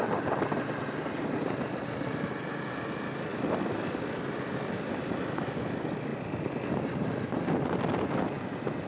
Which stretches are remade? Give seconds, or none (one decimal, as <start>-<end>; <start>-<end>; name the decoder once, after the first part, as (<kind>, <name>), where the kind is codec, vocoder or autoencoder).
0.0-3.3 (vocoder, BigVGAN v2); 4.4-8.9